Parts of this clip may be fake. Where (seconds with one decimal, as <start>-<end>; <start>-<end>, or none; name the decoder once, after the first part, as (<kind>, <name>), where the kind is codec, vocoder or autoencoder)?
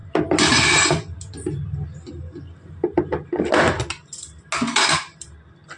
none